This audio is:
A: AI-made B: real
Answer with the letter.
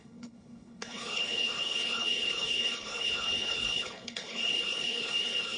A